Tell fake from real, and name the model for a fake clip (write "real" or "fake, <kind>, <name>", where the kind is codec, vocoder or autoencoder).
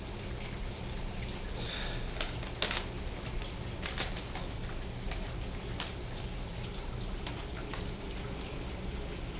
real